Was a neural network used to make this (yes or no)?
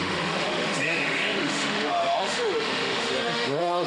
yes